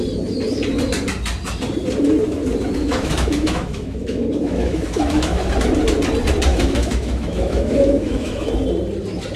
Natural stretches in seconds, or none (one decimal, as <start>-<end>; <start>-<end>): 0.0-2.8; 5.4-6.5; 8.5-9.4